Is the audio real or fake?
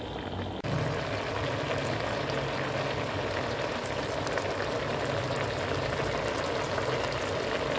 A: real